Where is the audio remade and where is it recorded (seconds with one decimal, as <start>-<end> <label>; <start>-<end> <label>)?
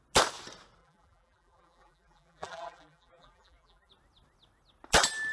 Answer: 0.0-0.8 recorded; 0.8-3.9 remade; 3.9-5.3 recorded